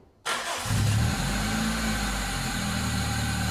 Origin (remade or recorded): recorded